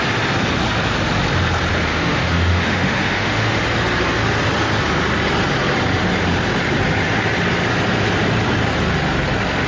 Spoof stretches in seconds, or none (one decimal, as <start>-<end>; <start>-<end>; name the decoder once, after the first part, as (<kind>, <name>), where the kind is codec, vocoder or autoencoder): 1.9-3.6 (autoencoder, DAC-VAE)